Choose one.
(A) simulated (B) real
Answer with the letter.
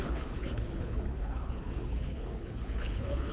A